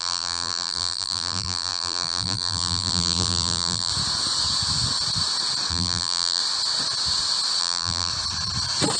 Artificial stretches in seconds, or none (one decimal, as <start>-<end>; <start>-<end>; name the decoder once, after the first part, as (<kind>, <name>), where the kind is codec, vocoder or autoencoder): 0.0-3.9 (vocoder, BigVGAN v2); 5.7-6.4; 7.6-8.1